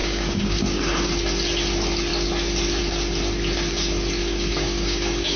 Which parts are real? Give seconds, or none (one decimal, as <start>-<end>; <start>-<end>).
0.6-4.2